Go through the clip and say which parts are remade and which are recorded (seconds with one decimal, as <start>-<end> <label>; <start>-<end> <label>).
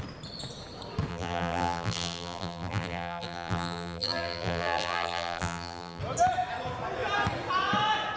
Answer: 0.0-1.1 recorded; 1.1-6.0 remade; 6.0-8.2 recorded